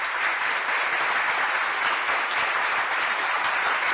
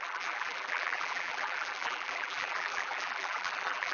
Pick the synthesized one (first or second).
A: second